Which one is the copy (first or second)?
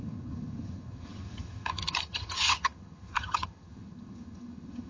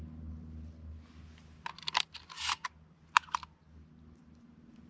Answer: first